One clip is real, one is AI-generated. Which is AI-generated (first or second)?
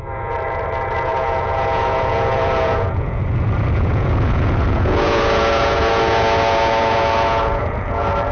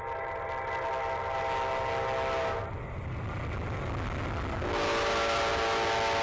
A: first